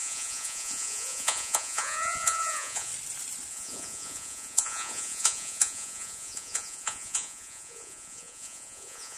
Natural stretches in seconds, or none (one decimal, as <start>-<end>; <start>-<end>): 2.9-3.5